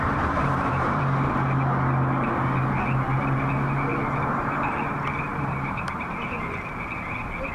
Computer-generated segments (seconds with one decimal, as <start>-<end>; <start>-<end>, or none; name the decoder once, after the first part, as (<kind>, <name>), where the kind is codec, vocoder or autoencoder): 0.4-1.0 (vocoder, BigVGAN v2); 5.3-6.9